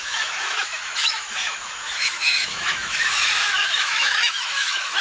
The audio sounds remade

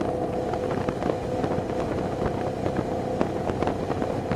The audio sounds recorded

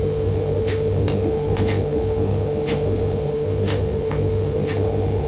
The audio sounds remade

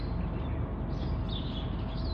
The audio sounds recorded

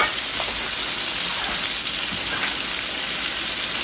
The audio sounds recorded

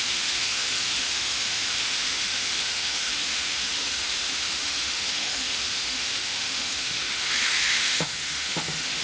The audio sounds remade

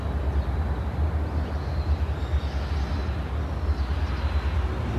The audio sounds recorded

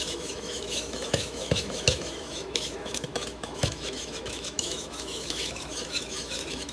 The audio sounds remade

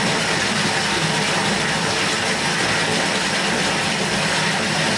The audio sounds recorded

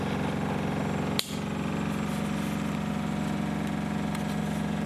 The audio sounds recorded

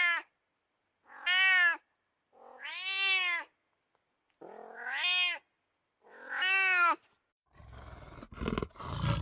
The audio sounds recorded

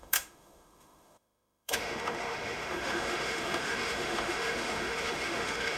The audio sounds remade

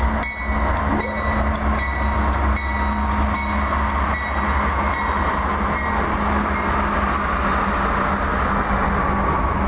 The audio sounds recorded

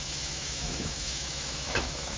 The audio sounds remade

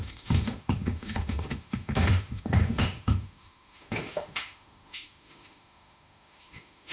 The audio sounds remade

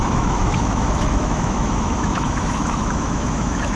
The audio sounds remade